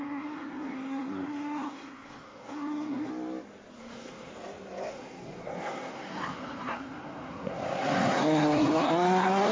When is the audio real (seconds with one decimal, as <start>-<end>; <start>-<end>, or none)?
3.1-3.8; 4.3-4.9